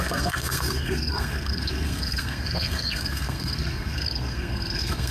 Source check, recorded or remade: remade